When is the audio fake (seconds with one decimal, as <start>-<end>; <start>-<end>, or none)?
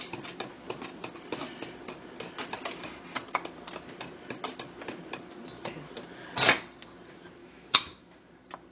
7.4-8.2